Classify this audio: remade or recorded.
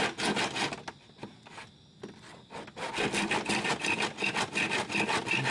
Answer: recorded